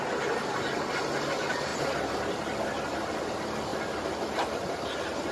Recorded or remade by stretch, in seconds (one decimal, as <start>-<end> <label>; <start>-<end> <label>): 0.0-3.7 recorded; 3.7-5.3 remade